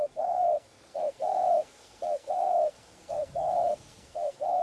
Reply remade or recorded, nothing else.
remade